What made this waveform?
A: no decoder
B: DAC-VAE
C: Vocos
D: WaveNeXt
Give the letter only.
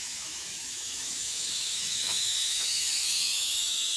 B